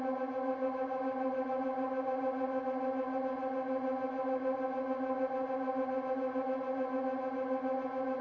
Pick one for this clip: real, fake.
real